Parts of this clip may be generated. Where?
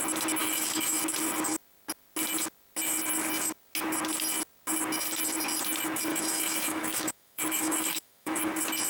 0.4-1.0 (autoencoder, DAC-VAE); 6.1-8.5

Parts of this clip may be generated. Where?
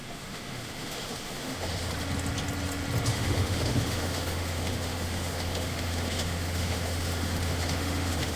0.0-1.9 (autoencoder, DAC-VAE); 3.1-8.4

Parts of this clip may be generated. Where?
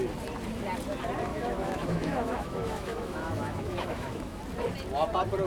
1.3-4.4 (autoencoder, DAC-VAE)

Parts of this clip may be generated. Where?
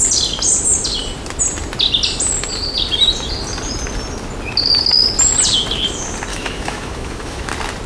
6.3-7.5 (autoencoder, DAC-VAE)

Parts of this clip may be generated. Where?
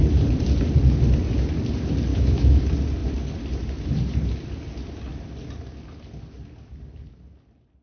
2.1-2.6 (autoencoder, DAC-VAE)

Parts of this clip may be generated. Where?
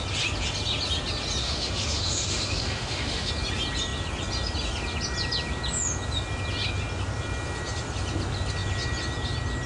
1.4-3.3 (autoencoder, DAC-VAE)